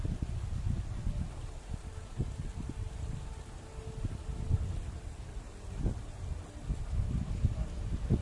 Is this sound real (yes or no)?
yes